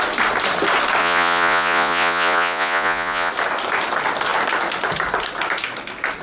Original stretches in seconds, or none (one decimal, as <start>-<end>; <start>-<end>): 0.0-1.0; 3.3-6.2